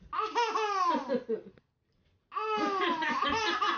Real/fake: real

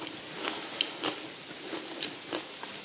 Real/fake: real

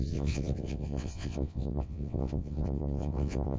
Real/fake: fake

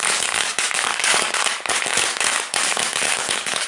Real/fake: fake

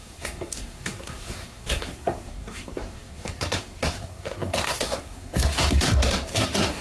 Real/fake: fake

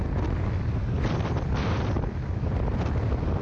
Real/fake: real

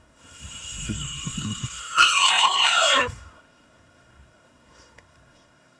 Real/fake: fake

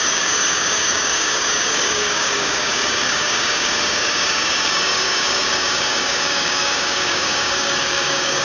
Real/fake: fake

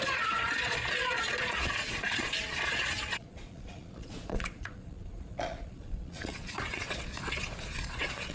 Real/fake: fake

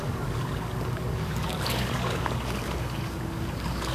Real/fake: fake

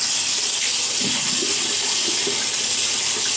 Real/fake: real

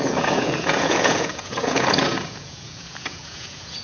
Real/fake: fake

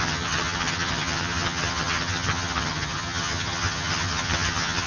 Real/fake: fake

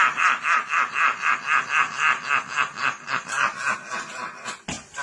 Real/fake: real